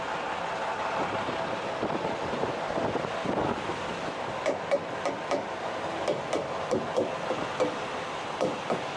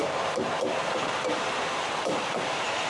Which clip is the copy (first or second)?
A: second